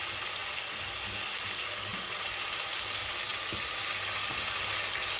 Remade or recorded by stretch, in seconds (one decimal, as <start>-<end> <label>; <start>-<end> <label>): 0.0-5.2 recorded